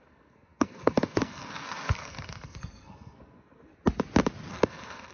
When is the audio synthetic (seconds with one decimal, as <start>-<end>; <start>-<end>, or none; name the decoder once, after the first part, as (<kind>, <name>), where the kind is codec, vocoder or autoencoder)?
0.0-3.7 (codec, SNAC); 4.5-5.1

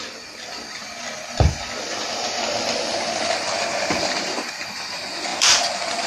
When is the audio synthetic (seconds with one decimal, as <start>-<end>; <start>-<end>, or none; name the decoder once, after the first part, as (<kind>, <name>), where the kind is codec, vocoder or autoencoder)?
0.0-0.8 (vocoder, BigVGAN v2); 2.9-6.1

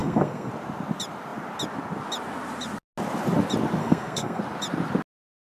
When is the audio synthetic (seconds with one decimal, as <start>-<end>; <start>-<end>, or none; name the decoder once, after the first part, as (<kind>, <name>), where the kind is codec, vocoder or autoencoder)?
0.0-0.5 (codec, SNAC); 3.8-4.4

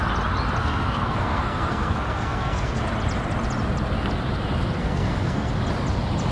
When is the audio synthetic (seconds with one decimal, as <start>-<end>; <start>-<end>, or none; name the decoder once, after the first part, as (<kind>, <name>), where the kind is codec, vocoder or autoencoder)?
0.6-2.8 (codec, SNAC); 4.8-5.5

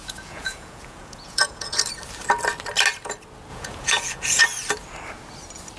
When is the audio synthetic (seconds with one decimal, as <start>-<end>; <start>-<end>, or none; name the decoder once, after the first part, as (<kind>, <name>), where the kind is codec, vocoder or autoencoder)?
0.0-1.8 (vocoder, Vocos); 3.5-4.4